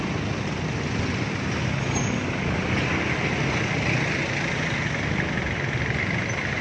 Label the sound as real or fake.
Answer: real